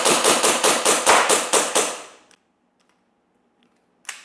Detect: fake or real real